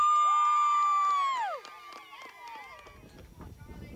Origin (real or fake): real